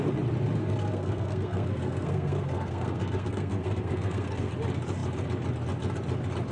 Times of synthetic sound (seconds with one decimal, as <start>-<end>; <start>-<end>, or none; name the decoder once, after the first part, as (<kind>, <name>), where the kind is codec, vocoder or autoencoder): 0.6-4.5 (codec, SNAC)